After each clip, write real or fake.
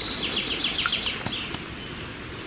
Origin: real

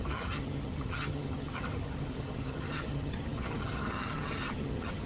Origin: fake